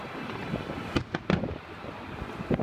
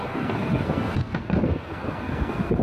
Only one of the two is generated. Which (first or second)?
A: second